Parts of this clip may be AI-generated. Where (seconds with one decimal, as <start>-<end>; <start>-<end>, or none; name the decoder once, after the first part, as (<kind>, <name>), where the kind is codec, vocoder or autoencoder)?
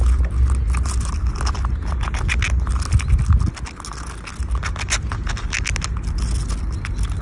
none